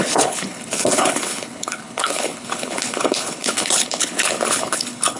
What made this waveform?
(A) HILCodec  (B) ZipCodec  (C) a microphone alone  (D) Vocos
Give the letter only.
A